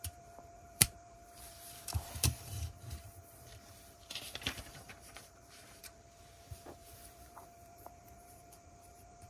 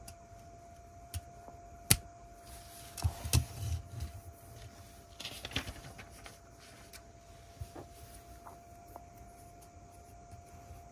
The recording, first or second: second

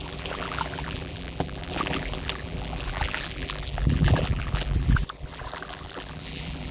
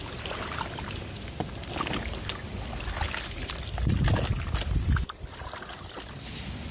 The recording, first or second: second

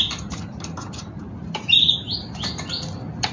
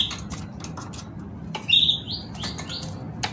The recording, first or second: second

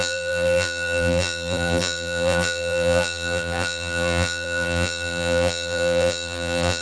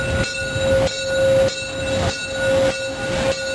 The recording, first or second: second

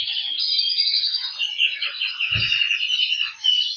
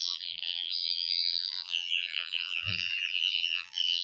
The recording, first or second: first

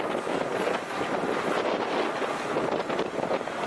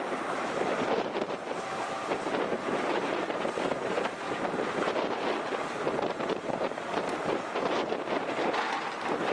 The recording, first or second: first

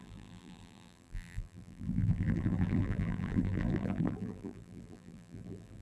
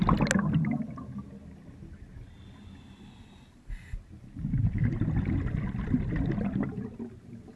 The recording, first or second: second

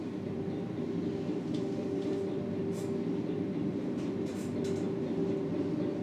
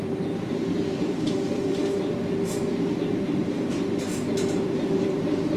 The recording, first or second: first